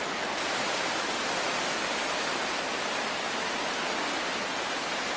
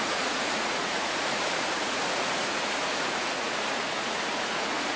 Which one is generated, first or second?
second